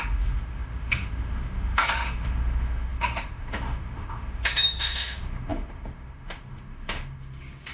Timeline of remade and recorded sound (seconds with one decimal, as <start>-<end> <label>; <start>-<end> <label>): 0.0-7.7 remade